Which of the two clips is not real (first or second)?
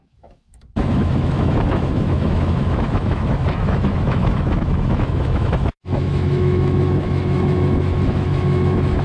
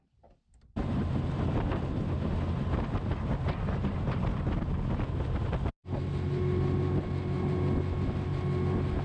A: first